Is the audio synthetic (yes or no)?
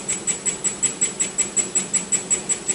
no